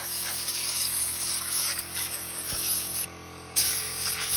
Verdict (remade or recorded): remade